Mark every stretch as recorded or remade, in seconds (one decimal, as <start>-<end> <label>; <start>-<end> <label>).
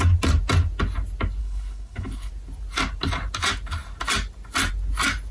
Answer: 0.0-1.4 recorded; 1.4-2.3 remade; 2.3-5.3 recorded